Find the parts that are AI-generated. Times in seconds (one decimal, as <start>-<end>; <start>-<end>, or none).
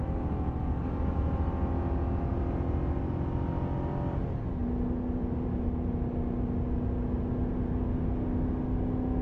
5.2-5.8